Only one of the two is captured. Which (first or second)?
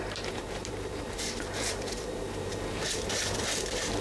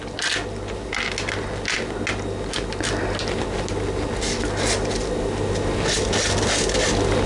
second